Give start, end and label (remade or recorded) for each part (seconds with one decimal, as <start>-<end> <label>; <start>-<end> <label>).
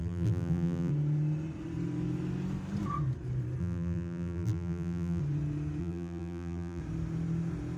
0.0-0.9 remade; 0.9-3.6 recorded; 3.6-5.2 remade; 5.2-5.8 recorded; 5.8-6.8 remade; 6.8-7.8 recorded